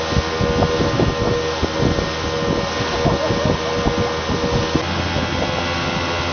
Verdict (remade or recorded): recorded